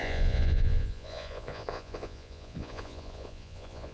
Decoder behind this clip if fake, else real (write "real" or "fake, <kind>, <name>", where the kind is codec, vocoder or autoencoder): fake, vocoder, Vocos